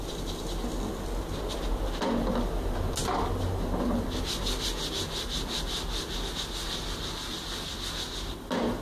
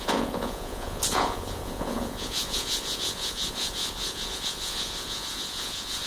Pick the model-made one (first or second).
second